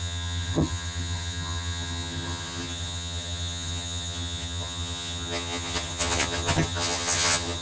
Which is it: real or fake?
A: fake